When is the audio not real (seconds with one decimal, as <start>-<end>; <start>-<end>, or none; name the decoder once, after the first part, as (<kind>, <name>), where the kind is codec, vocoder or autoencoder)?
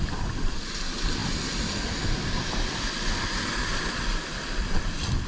none